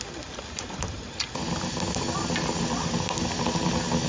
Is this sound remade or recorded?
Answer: recorded